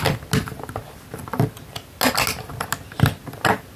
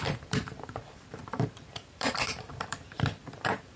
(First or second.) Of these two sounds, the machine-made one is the second